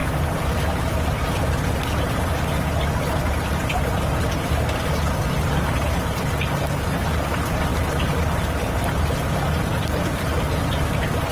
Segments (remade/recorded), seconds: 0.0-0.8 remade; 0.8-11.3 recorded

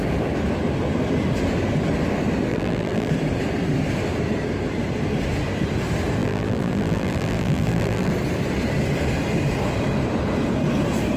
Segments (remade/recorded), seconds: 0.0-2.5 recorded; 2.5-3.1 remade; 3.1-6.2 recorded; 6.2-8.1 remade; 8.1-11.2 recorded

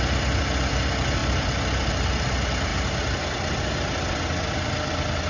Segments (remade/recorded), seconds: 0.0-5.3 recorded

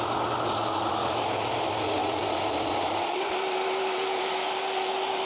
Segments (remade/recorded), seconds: 0.0-2.0 recorded; 2.0-5.3 remade